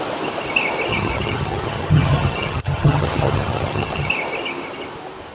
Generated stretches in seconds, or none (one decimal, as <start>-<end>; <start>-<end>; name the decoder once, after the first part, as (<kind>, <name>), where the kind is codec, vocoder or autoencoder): 0.9-4.1 (vocoder, HiFi-GAN)

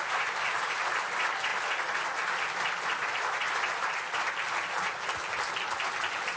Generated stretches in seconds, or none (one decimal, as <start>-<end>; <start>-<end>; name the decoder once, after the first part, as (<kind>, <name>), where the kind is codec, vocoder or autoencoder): none

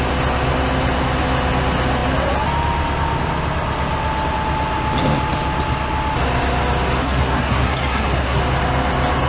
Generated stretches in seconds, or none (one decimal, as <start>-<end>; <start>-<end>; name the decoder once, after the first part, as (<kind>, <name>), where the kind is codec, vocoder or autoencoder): 7.0-8.4 (codec, SNAC)